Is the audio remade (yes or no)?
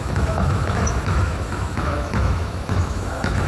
yes